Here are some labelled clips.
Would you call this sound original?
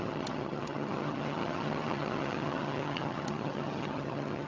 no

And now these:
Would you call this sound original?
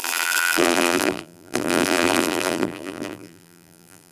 no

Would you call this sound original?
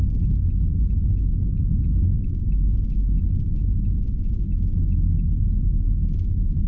yes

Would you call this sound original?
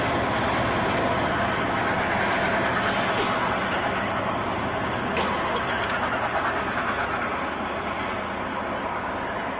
yes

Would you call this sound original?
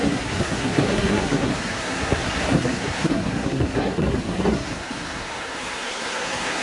no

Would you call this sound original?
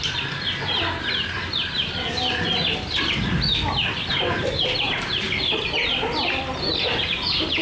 yes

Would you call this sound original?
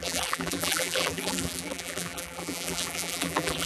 no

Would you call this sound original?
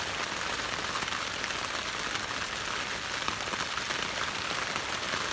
yes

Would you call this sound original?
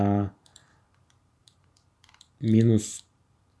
no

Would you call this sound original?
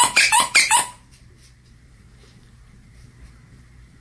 no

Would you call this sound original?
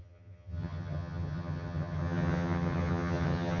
no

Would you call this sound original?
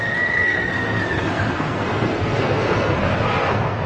no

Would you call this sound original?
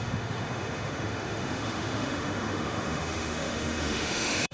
no